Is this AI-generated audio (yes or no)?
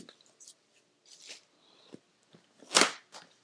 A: no